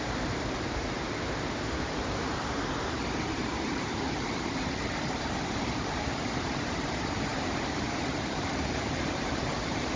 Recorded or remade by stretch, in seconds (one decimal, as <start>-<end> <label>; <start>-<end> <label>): 0.0-10.0 remade